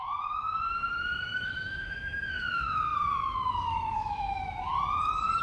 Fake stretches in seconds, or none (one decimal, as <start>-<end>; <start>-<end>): 0.0-4.7